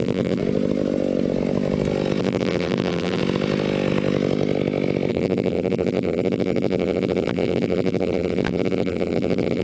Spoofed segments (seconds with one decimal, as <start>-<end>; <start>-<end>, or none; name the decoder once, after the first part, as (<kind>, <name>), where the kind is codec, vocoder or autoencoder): 0.0-0.4 (vocoder, BigVGAN v2); 2.2-3.2; 5.1-9.6